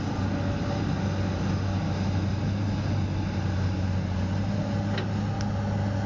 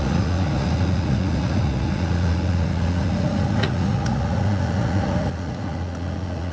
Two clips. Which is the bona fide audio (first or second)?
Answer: first